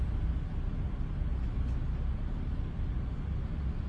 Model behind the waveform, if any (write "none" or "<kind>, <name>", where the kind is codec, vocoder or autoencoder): none